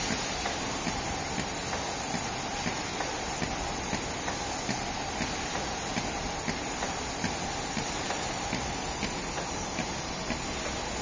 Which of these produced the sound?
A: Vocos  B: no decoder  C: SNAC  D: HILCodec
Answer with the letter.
B